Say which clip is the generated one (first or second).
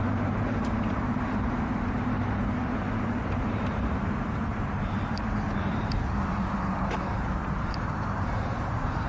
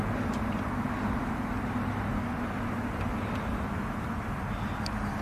first